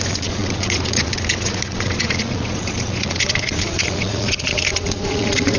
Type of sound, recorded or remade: remade